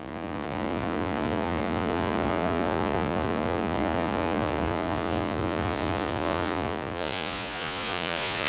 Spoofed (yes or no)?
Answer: yes